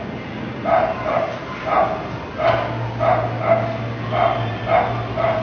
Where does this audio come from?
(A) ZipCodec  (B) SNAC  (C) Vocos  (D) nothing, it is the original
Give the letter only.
D